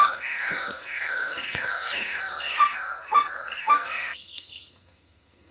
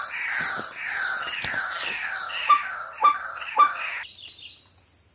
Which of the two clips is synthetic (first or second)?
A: first